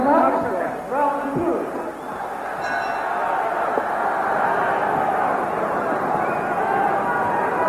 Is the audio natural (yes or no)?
yes